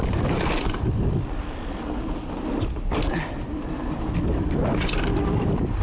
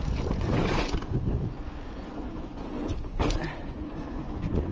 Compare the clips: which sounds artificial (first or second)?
second